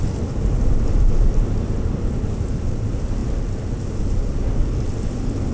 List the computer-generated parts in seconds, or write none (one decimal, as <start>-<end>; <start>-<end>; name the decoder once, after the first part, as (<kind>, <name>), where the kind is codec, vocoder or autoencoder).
none